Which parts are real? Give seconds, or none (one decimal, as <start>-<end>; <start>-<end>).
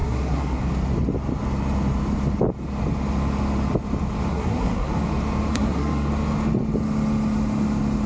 0.6-4.3; 4.9-5.5; 6.1-8.1